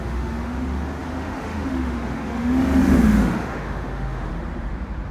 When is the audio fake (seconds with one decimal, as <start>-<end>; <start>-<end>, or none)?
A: 0.0-4.3